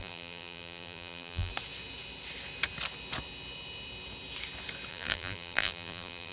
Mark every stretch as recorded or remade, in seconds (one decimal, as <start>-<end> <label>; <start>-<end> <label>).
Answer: 0.0-1.5 remade; 1.5-4.9 recorded; 4.9-6.3 remade